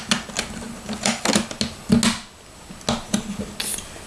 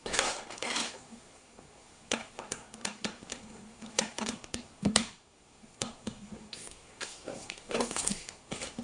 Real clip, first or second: first